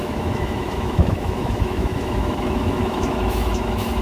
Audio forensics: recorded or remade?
remade